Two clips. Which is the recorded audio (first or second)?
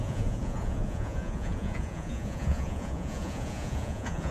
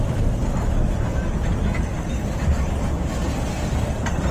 second